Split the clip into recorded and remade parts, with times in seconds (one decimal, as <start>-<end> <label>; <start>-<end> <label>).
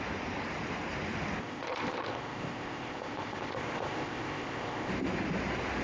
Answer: 0.0-1.4 recorded; 1.4-4.9 remade; 4.9-5.8 recorded